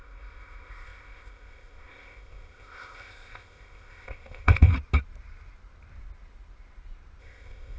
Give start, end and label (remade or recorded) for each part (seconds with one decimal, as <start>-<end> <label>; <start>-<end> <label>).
0.0-4.7 remade; 4.7-7.2 recorded; 7.2-7.8 remade